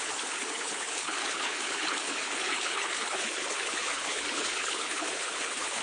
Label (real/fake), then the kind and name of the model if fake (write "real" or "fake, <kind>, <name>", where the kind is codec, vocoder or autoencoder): fake, codec, HILCodec